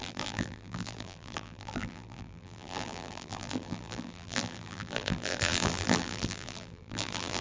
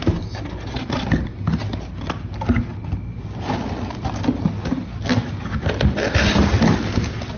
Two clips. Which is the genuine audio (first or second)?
second